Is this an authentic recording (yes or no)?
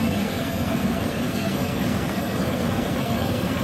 no